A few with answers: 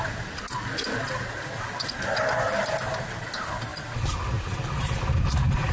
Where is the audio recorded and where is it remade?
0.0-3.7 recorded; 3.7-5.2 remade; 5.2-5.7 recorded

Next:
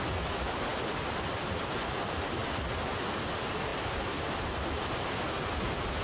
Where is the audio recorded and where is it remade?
0.0-3.7 recorded; 3.7-5.2 remade; 5.2-6.0 recorded

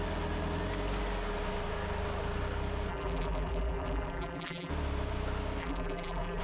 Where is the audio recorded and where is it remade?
0.0-2.9 recorded; 2.9-4.7 remade; 4.7-5.6 recorded; 5.6-6.4 remade

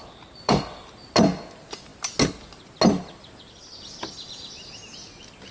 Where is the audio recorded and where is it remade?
0.0-0.6 remade; 0.6-5.5 recorded

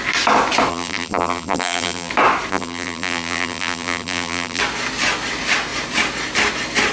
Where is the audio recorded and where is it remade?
0.0-0.7 recorded; 0.7-2.1 remade; 2.1-2.5 recorded; 2.5-4.6 remade; 4.6-6.9 recorded

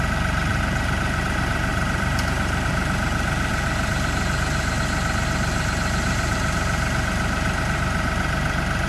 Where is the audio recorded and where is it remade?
0.0-0.5 recorded; 0.5-1.2 remade; 1.2-1.7 recorded; 1.7-2.7 remade; 2.7-8.9 recorded

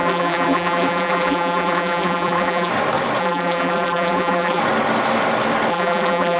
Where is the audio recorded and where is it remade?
0.0-2.7 remade; 2.7-3.2 recorded; 3.2-4.6 remade; 4.6-5.7 recorded; 5.7-6.4 remade